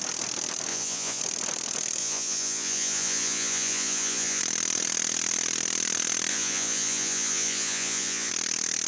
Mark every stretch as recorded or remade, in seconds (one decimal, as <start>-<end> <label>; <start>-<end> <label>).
0.0-0.7 recorded; 0.7-1.2 remade; 1.2-2.0 recorded; 2.0-4.4 remade; 4.4-6.3 recorded; 6.3-8.3 remade; 8.3-8.9 recorded